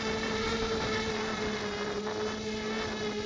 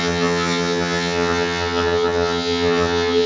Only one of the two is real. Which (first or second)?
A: first